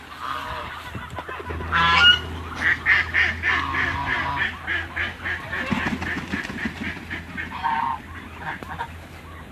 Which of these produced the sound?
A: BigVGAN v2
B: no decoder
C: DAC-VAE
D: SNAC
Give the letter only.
B